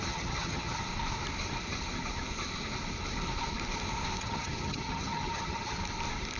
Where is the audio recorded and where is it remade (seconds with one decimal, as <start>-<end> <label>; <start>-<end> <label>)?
0.0-0.9 remade; 0.9-4.2 recorded; 4.2-5.8 remade; 5.8-6.4 recorded